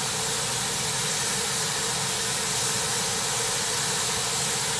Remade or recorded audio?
recorded